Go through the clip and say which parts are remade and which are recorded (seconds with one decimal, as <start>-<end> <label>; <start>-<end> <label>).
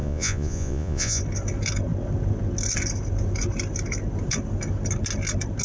0.0-1.2 remade; 1.2-5.6 recorded